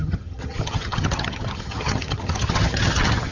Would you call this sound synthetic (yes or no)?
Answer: yes